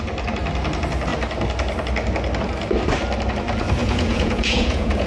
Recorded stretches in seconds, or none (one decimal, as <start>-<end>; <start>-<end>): 0.0-3.8